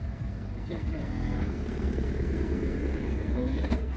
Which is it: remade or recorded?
remade